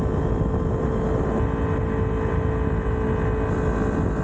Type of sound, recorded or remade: recorded